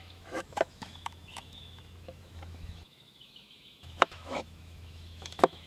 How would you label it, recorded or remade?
remade